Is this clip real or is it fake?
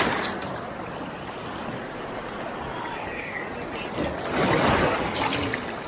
real